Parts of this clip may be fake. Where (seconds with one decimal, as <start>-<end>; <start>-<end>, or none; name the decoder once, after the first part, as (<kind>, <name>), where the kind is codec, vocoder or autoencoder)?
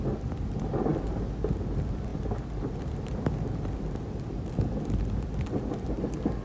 2.1-3.4 (vocoder, BigVGAN v2)